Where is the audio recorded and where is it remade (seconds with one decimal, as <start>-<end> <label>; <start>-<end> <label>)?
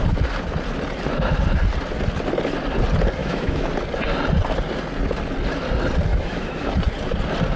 0.0-3.2 recorded; 3.2-3.7 remade; 3.7-6.1 recorded; 6.1-6.7 remade; 6.7-7.6 recorded